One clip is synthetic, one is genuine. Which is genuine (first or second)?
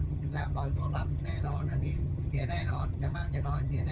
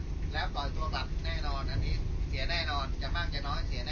second